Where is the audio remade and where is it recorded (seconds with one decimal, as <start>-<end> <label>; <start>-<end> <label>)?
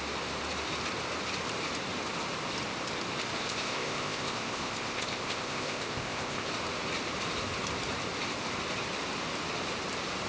0.0-3.4 recorded; 3.4-6.5 remade; 6.5-10.3 recorded